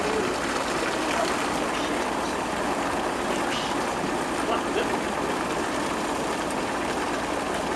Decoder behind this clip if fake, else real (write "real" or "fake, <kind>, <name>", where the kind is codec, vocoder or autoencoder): real